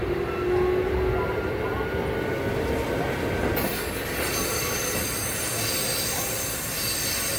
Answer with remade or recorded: recorded